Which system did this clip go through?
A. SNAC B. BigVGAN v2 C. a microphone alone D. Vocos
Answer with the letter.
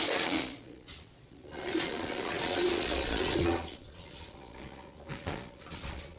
D